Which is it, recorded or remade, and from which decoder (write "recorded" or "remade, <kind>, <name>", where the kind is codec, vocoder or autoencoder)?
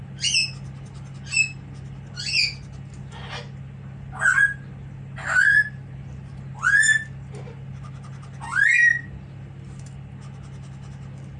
recorded